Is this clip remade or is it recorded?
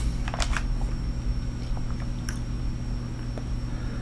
recorded